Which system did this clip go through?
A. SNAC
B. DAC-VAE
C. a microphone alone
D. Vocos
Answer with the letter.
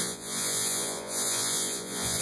D